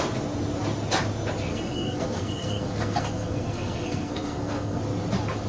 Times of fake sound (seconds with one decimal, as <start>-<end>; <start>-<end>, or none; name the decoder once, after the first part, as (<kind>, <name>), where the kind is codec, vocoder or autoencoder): 1.5-4.8 (codec, SNAC)